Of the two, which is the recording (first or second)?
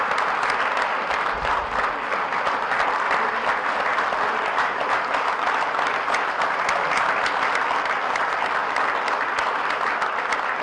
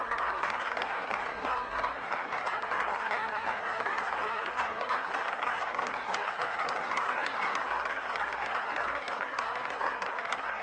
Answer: first